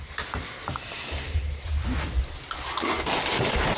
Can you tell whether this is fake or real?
real